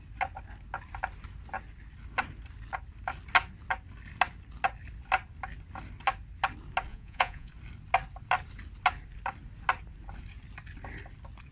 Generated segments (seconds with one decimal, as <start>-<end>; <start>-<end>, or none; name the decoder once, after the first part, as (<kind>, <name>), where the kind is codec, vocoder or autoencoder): 6.9-7.5 (vocoder, Vocos)

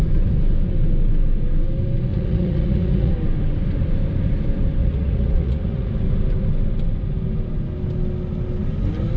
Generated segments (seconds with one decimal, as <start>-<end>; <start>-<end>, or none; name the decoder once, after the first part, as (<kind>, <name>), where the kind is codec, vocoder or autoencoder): 2.1-3.1 (vocoder, Vocos); 4.8-5.9

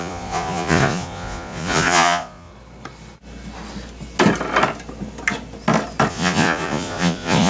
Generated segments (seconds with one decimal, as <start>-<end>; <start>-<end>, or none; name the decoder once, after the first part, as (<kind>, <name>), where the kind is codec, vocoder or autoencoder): 0.0-2.5 (vocoder, Vocos); 6.1-7.5

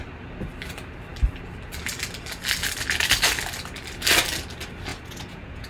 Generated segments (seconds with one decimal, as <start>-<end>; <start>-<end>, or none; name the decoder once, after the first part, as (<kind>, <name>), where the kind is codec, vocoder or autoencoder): 4.9-5.7 (vocoder, Vocos)

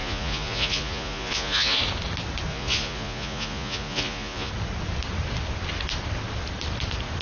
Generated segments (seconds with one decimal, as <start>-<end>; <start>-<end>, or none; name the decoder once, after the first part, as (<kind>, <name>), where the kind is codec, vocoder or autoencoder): 0.0-1.8 (vocoder, Vocos); 2.5-4.5

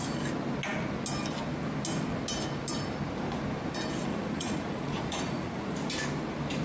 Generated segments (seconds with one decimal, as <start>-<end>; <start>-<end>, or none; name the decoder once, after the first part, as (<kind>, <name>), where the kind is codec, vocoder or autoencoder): 4.1-5.9 (vocoder, Vocos)